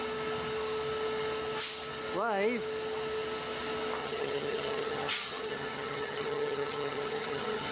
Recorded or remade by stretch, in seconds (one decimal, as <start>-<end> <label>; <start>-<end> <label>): 0.0-4.0 recorded; 4.0-7.7 remade